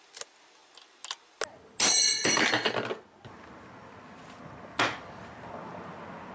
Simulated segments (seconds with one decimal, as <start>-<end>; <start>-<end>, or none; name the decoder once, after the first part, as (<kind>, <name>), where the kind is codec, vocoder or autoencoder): none